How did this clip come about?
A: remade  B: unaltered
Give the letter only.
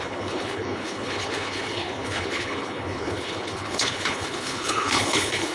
A